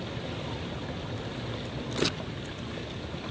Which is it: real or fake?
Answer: real